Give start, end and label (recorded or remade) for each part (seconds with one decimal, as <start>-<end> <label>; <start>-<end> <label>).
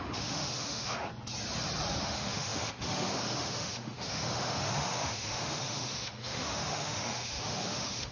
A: 0.0-1.1 remade; 1.1-2.0 recorded; 2.0-8.1 remade